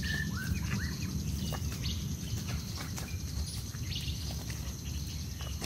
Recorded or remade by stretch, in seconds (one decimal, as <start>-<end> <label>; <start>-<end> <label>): 0.0-5.7 recorded